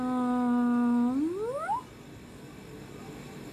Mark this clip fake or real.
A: real